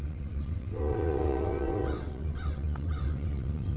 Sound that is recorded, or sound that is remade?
remade